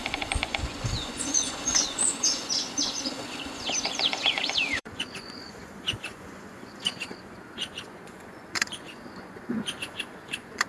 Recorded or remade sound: remade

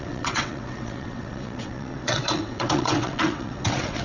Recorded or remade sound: remade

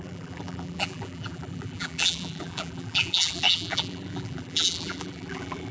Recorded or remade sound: remade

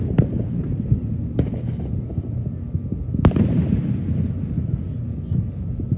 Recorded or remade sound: recorded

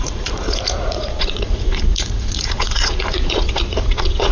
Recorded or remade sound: remade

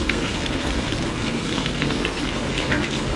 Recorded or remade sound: remade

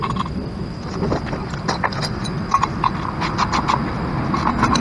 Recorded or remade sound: remade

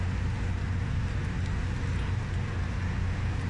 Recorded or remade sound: recorded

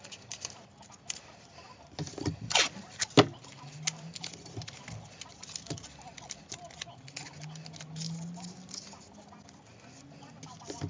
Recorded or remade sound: recorded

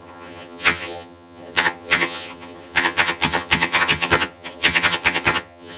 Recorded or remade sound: remade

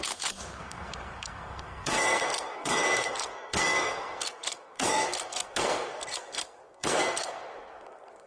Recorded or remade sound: remade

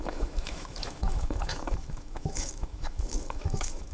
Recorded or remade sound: remade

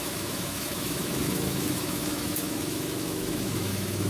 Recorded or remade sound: remade